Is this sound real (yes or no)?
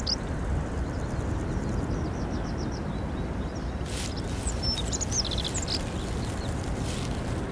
yes